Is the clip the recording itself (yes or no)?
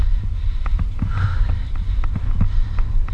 yes